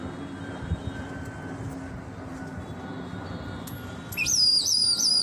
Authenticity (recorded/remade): recorded